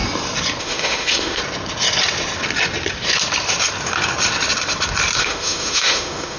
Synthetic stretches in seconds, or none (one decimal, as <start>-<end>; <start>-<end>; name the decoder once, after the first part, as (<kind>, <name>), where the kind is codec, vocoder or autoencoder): 0.6-1.4 (autoencoder, DAC-VAE); 5.2-6.4